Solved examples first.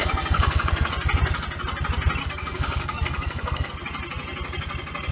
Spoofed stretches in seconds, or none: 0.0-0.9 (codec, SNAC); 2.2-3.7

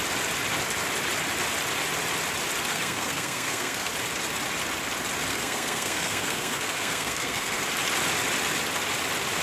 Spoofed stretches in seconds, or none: 2.7-3.9 (codec, SNAC); 5.3-7.6

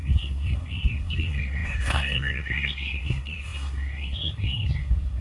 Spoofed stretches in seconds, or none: 0.0-5.2 (codec, SNAC)

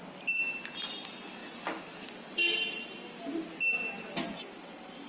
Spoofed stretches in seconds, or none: none